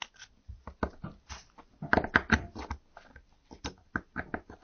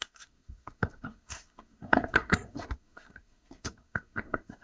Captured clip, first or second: first